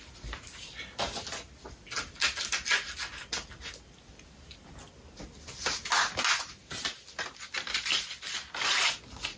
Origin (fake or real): real